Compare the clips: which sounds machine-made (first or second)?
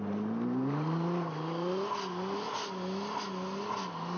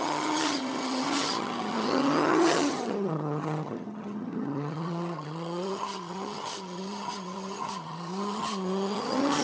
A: second